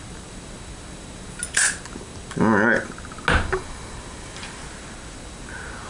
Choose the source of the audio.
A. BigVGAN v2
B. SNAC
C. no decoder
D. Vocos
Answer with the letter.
C